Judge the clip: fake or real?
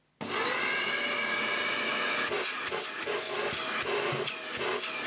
real